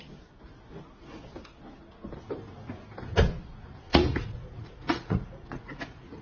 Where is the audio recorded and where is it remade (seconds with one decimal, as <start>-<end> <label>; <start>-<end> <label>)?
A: 0.0-3.9 recorded; 3.9-6.2 remade